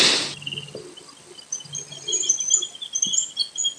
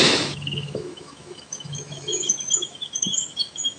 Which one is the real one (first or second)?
first